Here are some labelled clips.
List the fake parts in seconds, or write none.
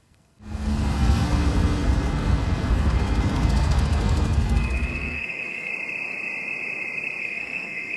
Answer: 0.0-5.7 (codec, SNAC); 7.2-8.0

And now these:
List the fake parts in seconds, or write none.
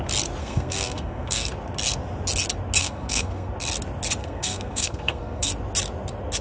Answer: 0.4-1.5 (codec, SNAC); 2.8-3.5; 4.2-5.5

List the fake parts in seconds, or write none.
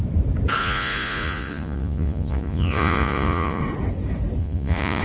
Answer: 0.6-3.6 (vocoder, Vocos); 4.4-5.0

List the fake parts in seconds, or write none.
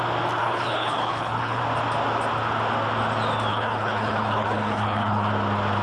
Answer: 0.4-1.6 (codec, HILCodec); 3.5-5.3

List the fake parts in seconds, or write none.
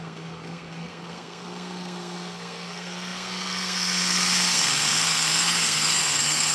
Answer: 0.0-6.5 (codec, SNAC)